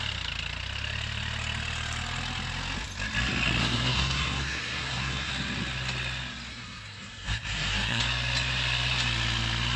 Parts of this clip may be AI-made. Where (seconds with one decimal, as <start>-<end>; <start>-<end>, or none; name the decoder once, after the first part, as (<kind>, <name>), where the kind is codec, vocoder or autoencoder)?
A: 3.6-5.3 (codec, SNAC); 6.5-8.0